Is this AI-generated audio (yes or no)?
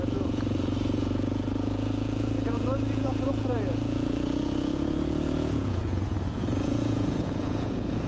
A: yes